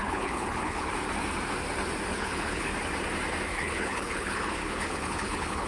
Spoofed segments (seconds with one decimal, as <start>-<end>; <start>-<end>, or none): 0.0-0.9; 2.1-2.7; 3.5-5.7